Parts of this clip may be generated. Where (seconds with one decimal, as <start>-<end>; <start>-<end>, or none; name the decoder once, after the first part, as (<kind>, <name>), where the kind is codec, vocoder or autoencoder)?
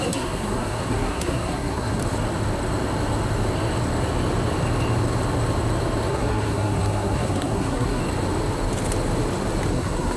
0.0-2.0 (codec, SNAC); 6.1-8.0; 9.7-10.2